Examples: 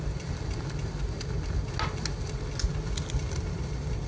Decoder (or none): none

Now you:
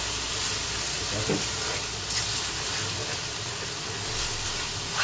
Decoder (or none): none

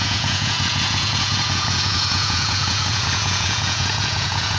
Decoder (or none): vocoder, Vocos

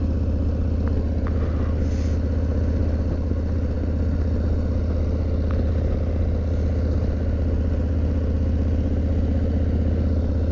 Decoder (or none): none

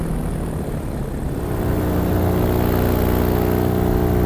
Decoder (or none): none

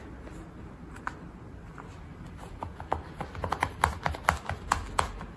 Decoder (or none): none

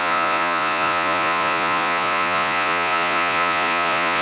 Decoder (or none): vocoder, Vocos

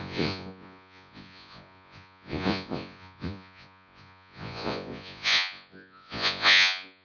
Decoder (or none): vocoder, Vocos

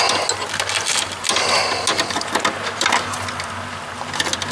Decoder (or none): none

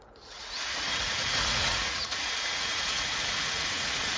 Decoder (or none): vocoder, Vocos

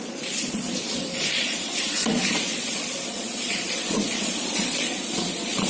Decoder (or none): vocoder, Vocos